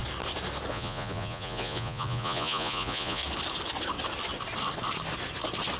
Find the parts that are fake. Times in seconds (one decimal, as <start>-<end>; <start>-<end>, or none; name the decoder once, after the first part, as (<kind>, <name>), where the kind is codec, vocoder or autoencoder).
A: 0.7-3.2 (vocoder, Vocos)